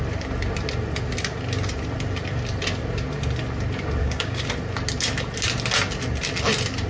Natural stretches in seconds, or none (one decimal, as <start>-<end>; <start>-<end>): 0.0-4.0; 4.5-6.9